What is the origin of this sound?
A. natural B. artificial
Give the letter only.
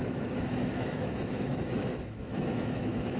B